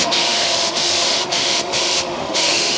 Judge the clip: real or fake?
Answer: fake